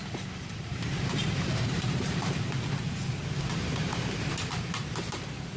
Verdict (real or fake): fake